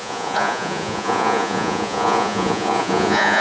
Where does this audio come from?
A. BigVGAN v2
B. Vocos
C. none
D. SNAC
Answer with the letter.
B